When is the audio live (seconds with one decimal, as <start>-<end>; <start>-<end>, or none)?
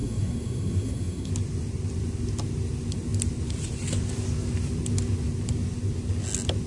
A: 1.3-6.7